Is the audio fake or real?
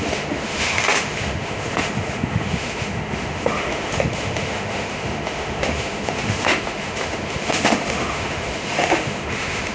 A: fake